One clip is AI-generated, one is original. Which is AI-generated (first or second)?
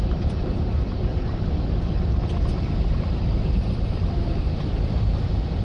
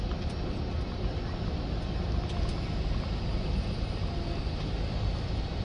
first